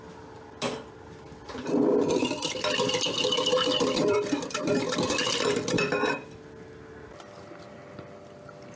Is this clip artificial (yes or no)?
no